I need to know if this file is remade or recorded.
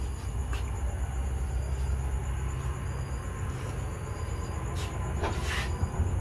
recorded